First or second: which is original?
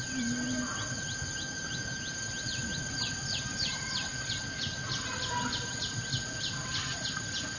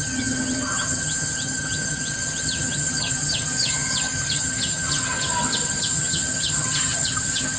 first